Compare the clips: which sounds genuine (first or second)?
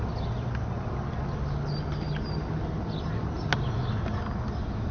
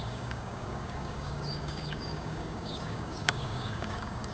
first